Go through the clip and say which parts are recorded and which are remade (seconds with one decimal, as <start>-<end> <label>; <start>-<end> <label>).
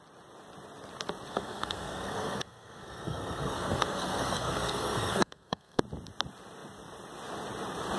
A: 0.0-1.3 recorded; 1.3-5.8 remade; 5.8-8.0 recorded